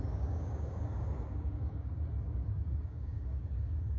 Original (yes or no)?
no